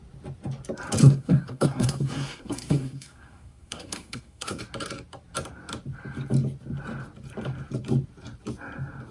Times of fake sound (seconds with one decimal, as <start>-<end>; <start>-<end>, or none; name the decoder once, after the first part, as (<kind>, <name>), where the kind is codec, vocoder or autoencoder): 1.0-4.6 (codec, SNAC)